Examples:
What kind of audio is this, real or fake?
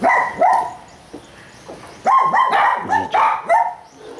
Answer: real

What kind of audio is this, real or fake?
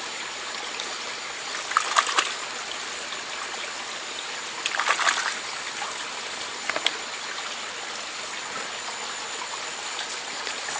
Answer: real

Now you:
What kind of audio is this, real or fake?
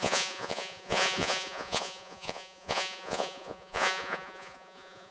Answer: fake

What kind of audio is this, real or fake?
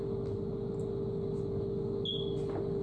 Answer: real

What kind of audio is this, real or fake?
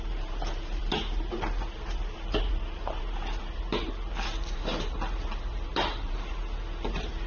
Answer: fake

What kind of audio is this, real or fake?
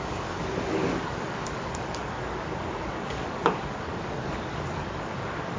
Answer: fake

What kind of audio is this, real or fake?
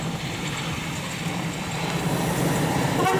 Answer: fake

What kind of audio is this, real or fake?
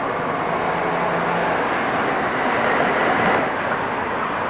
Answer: real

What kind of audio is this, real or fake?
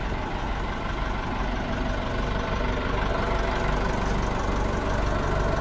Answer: real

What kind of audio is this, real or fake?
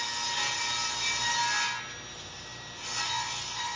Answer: real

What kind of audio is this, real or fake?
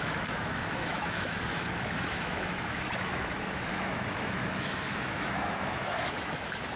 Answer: fake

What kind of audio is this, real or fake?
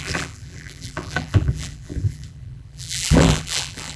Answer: fake